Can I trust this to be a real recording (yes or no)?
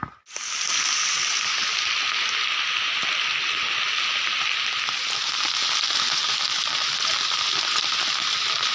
yes